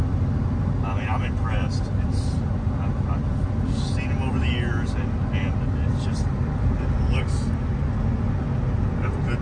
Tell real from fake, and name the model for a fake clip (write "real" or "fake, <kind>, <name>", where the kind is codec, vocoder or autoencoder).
real